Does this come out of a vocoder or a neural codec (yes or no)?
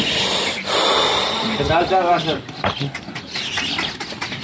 no